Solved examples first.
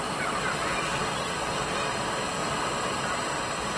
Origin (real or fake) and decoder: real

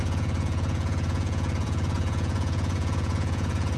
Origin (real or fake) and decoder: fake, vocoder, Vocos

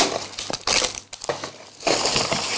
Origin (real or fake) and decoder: real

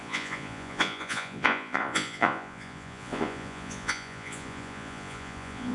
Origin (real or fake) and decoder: fake, vocoder, Vocos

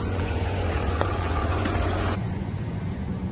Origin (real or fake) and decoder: fake, vocoder, Vocos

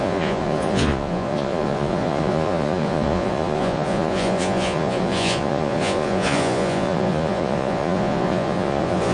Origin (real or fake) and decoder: fake, vocoder, Vocos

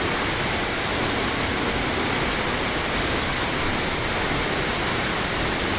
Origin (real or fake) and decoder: real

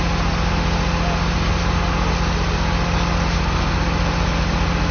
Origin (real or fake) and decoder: real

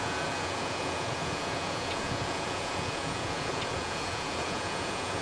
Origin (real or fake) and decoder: fake, vocoder, Vocos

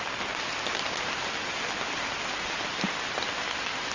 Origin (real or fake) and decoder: real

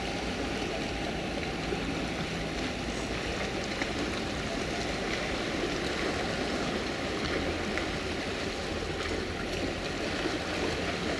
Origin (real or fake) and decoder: real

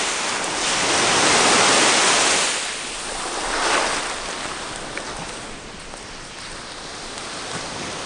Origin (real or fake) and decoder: real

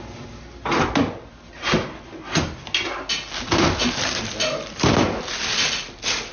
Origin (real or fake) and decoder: real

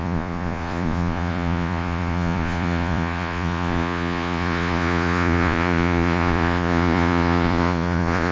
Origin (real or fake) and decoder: fake, vocoder, Vocos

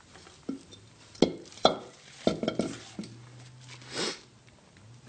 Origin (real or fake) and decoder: real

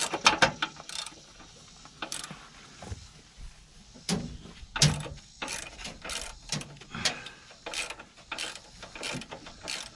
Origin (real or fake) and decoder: real